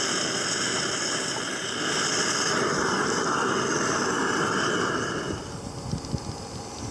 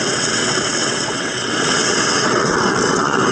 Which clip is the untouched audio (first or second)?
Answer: first